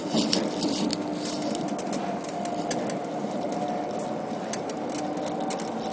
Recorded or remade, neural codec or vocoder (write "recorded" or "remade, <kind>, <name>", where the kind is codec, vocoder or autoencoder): recorded